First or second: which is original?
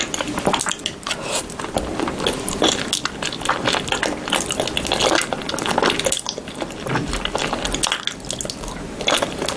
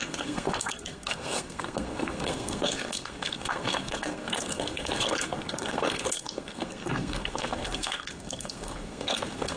first